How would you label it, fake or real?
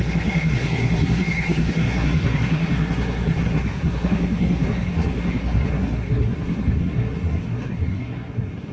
fake